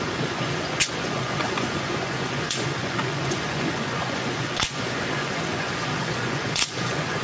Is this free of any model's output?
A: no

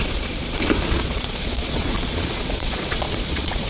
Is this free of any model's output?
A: no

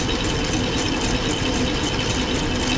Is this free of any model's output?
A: yes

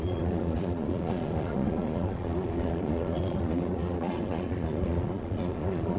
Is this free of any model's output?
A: no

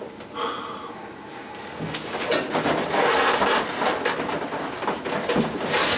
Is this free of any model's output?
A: yes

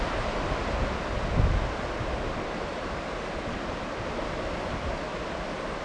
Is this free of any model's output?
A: yes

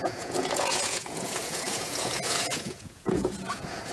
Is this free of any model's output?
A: no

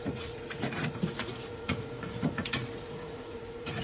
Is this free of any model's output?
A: no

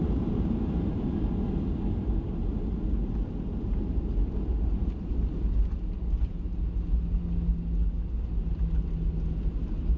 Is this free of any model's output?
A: yes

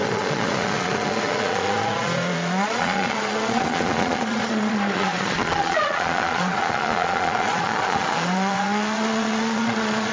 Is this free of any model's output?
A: no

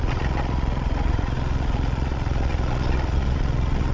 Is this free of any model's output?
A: no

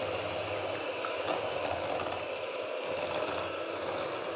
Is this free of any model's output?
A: yes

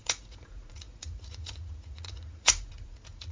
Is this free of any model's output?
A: no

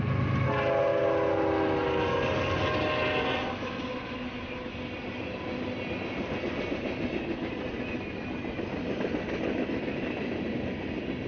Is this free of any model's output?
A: yes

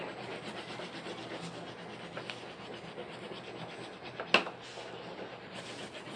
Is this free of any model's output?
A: yes